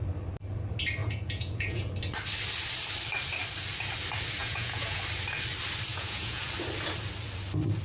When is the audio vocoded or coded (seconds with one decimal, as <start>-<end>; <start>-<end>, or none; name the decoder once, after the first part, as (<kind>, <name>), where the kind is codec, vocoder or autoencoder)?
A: 1.0-1.9 (vocoder, Vocos); 4.4-5.0; 5.9-6.5